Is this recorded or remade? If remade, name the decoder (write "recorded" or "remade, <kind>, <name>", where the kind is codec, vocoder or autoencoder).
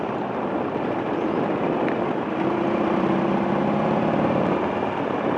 recorded